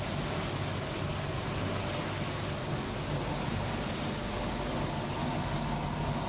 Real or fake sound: real